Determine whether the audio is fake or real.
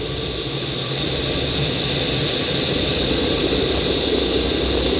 real